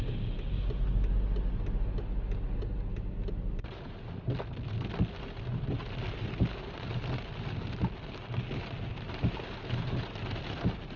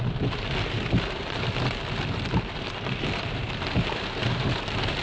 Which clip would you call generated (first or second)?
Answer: second